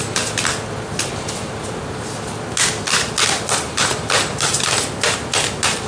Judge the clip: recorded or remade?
recorded